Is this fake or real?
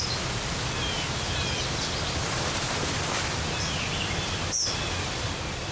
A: real